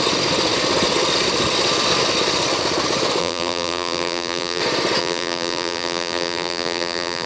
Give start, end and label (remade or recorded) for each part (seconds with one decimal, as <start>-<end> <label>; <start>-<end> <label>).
0.0-3.2 recorded; 3.2-4.6 remade; 4.6-5.0 recorded; 5.0-7.3 remade